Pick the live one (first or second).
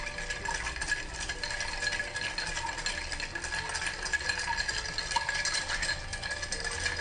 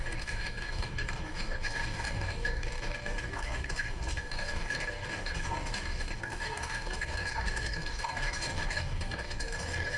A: first